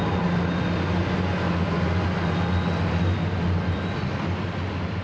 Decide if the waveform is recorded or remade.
recorded